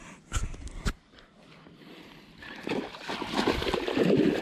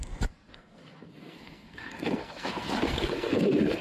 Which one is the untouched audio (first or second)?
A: first